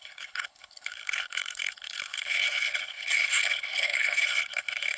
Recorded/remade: remade